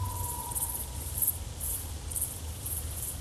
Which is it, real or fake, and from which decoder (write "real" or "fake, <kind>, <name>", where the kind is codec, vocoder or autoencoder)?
fake, vocoder, BigVGAN v2